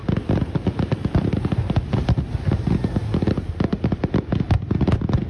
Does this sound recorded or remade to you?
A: recorded